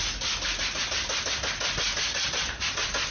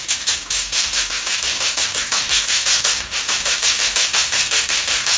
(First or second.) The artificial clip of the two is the second